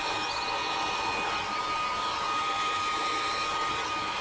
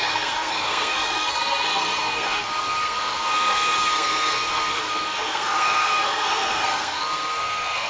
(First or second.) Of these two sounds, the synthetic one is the second